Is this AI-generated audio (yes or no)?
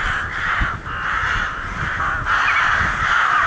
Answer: yes